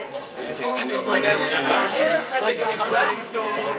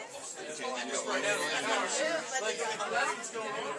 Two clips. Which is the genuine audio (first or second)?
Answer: second